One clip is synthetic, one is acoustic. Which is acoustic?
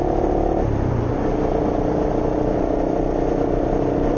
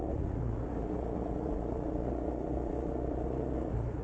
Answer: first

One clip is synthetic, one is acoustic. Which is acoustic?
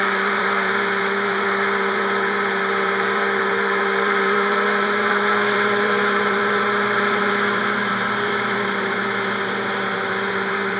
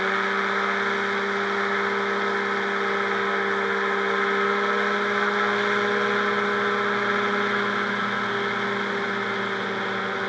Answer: second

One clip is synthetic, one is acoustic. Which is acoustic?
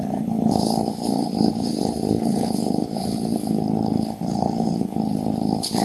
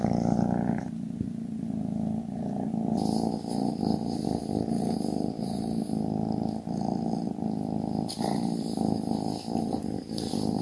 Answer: second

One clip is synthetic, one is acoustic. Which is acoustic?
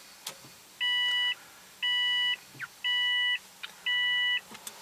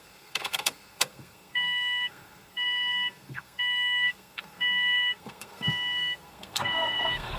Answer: first